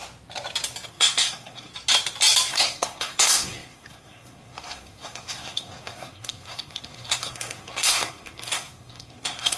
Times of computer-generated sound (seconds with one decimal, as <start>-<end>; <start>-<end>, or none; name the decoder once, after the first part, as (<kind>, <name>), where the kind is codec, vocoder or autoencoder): 0.9-1.7 (codec, SNAC); 2.5-9.6